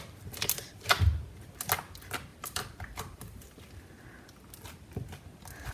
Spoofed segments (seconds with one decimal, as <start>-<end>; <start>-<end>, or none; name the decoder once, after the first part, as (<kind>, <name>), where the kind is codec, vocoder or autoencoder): 2.3-3.6 (vocoder, BigVGAN v2)